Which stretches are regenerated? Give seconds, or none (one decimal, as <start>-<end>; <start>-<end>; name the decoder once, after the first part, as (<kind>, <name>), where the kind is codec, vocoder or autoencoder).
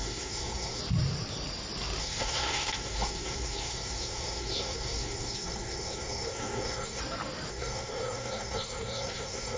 0.0-0.8 (codec, SNAC); 2.0-7.0; 7.5-9.6